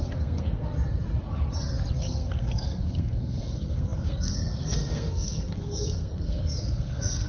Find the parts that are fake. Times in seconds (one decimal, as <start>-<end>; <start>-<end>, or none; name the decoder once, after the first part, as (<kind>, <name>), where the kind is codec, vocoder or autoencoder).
0.0-0.7 (codec, SNAC); 1.9-7.3